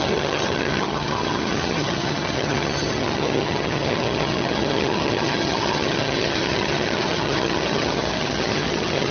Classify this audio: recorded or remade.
remade